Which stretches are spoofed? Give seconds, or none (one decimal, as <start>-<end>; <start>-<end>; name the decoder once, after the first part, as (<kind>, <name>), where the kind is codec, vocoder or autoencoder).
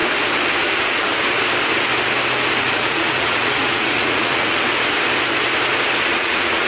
2.6-4.5 (vocoder, Vocos); 6.1-6.7